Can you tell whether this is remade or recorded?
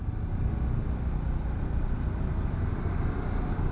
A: recorded